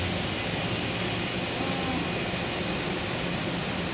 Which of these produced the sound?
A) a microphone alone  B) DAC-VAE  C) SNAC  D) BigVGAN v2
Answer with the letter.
A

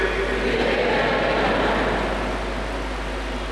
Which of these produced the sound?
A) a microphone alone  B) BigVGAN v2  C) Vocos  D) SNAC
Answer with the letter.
A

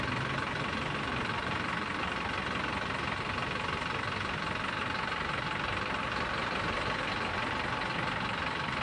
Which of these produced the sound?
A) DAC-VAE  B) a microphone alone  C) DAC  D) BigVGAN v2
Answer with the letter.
D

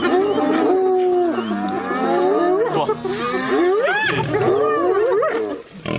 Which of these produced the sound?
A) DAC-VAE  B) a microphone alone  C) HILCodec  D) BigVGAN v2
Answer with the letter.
B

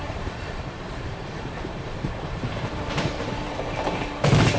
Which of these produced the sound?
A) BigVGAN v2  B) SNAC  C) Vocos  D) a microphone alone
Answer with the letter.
A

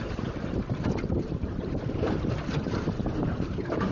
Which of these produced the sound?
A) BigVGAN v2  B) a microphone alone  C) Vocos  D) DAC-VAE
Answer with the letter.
A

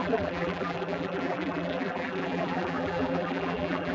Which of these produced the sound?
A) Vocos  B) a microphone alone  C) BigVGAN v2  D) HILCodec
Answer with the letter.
C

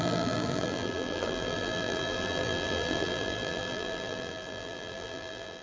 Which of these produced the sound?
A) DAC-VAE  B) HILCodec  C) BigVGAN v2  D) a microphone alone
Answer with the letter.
C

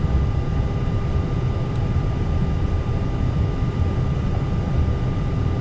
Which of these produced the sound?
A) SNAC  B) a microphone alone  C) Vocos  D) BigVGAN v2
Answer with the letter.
B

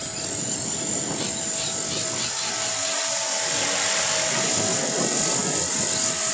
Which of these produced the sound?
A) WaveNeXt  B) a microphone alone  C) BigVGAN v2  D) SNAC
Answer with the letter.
C